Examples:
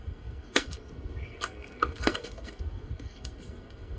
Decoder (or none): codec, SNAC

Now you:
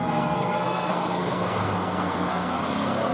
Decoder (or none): codec, SNAC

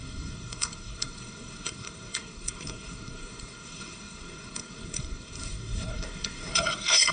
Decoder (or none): codec, SNAC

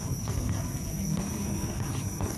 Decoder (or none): codec, SNAC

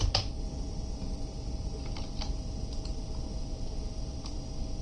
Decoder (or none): none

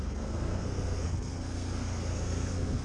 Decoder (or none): codec, SNAC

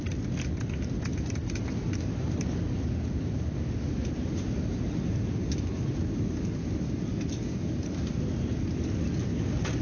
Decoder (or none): none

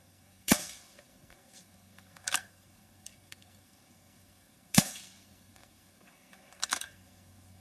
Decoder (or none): codec, SNAC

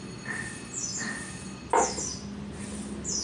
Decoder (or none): none